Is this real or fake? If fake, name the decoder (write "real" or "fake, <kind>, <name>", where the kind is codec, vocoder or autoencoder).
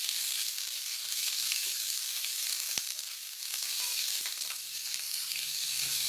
fake, codec, DAC